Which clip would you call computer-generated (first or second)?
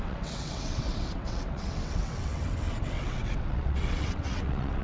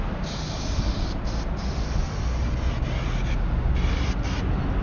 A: first